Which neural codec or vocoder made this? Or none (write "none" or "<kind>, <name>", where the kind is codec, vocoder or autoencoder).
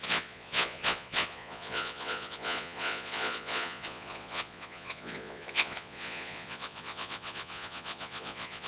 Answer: vocoder, Vocos